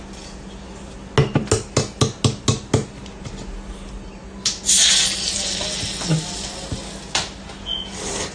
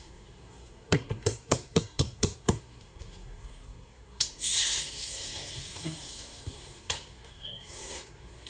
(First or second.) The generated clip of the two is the second